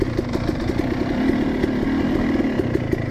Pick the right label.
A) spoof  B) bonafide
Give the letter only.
B